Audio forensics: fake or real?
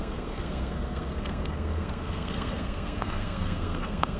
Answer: fake